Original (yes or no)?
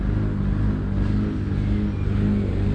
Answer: yes